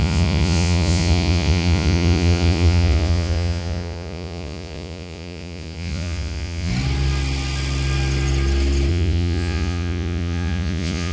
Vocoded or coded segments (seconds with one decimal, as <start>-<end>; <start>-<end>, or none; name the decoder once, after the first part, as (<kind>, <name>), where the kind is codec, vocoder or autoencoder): 0.0-6.7 (vocoder, Vocos); 8.9-11.1